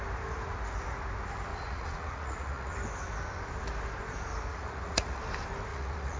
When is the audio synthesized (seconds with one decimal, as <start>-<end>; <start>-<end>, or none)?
1.5-2.7; 4.5-5.2; 5.7-6.2